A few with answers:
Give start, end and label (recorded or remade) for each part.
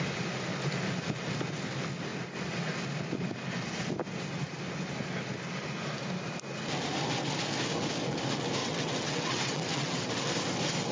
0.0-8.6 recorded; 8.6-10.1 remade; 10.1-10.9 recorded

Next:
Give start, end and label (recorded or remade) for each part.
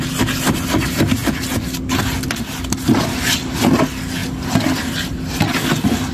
0.0-6.1 recorded